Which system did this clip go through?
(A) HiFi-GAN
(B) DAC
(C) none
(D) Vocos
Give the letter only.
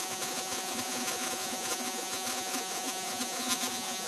D